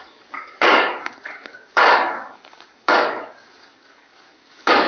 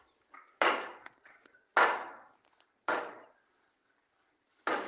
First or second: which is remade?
first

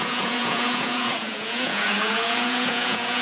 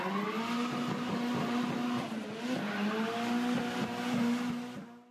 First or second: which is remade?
first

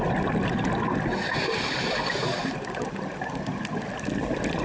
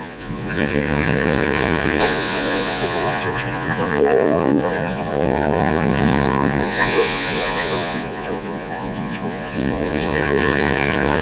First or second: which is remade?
second